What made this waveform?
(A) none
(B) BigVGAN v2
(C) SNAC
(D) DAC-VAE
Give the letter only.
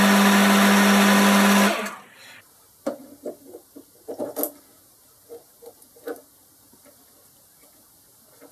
A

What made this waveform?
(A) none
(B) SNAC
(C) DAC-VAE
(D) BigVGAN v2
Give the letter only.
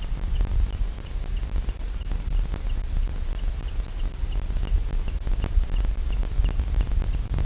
A